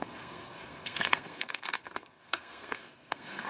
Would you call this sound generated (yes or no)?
yes